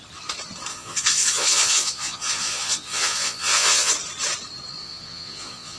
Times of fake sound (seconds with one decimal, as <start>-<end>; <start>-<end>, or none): 0.7-3.9; 4.8-5.8